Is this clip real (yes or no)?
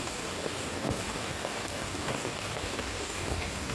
no